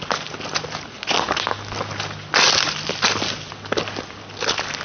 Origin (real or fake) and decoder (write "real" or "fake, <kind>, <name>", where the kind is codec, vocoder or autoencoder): real